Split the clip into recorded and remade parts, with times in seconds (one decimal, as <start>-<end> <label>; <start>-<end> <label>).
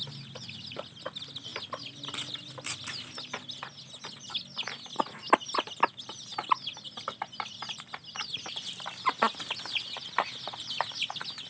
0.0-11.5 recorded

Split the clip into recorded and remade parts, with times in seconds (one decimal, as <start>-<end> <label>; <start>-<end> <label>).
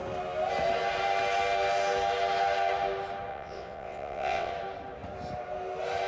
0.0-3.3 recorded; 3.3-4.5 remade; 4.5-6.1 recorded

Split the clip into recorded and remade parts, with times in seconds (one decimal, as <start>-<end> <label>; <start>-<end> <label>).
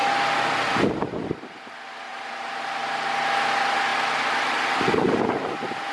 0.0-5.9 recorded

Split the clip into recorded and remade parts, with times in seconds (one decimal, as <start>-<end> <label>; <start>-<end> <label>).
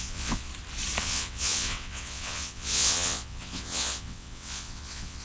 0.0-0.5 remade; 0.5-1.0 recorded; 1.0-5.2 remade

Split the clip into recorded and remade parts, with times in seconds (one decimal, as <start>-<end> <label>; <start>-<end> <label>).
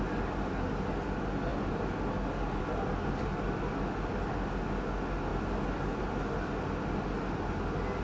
0.0-8.0 recorded